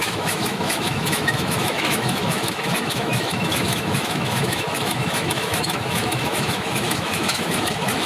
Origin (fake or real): fake